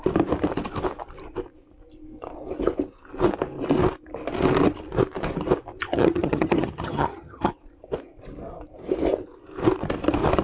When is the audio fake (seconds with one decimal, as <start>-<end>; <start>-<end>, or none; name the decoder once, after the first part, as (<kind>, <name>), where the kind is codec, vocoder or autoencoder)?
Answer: 5.9-7.5 (vocoder, HiFi-GAN)